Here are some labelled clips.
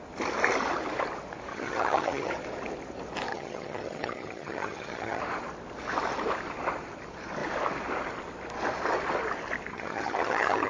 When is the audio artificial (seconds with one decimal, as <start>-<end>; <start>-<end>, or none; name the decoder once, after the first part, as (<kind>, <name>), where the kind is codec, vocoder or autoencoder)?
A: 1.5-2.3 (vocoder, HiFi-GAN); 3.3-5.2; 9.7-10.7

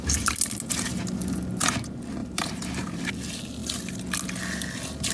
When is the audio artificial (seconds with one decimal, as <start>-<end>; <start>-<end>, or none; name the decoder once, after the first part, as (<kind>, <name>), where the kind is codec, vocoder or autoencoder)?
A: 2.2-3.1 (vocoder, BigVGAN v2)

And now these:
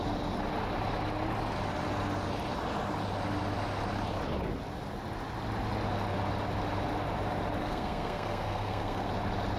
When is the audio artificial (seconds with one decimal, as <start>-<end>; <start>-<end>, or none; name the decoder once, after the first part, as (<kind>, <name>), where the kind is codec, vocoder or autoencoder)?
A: 7.6-9.1 (codec, SNAC)

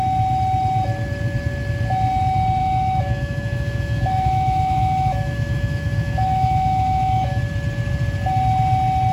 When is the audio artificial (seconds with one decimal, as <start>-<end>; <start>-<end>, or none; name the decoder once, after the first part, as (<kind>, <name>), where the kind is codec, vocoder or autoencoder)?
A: 2.6-7.4 (autoencoder, DAC-VAE)

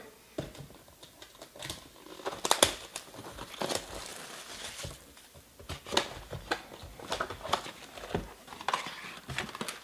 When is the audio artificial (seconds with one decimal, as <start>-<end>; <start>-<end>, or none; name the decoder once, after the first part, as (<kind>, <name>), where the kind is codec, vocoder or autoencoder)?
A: 2.9-3.6 (vocoder, BigVGAN v2); 4.1-5.4

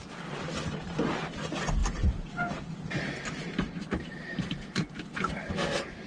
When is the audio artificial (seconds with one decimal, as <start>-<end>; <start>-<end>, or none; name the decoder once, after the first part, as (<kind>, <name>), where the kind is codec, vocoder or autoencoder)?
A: 1.8-5.5 (vocoder, BigVGAN v2)